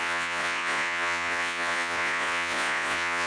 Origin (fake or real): fake